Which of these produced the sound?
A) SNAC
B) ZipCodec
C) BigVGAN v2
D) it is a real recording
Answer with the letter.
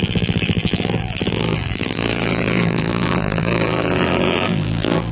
C